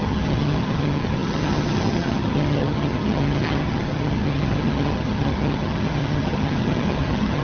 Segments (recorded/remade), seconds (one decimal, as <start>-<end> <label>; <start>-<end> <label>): 0.0-7.4 remade